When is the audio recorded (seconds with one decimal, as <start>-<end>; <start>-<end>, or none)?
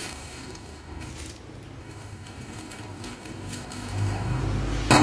1.1-1.8; 4.4-5.0